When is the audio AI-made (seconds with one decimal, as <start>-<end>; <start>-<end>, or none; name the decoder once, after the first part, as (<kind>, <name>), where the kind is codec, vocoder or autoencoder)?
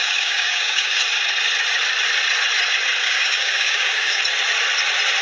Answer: 0.0-1.0 (codec, DAC); 3.0-4.2